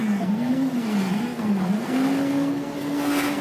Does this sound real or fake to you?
fake